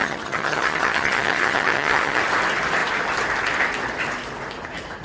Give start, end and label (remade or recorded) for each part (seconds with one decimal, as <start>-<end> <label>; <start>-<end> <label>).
0.0-2.2 remade; 2.2-5.0 recorded